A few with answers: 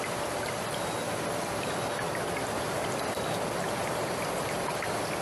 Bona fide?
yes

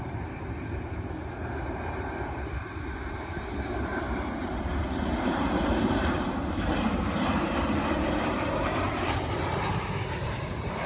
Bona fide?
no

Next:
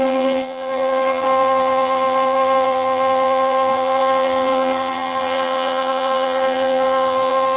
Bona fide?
no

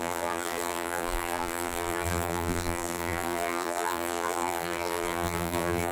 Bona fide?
no